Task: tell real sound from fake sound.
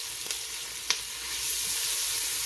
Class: real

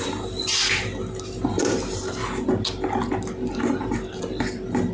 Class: real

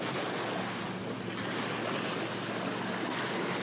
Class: real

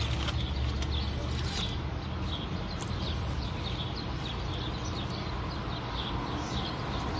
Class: real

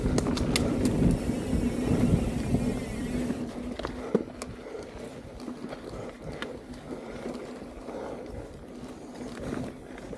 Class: real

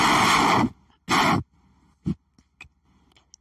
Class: real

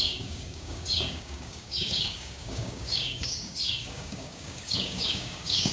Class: fake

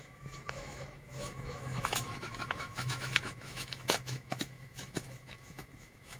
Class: fake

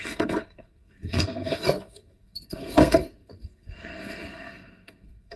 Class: fake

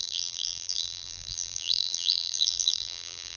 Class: fake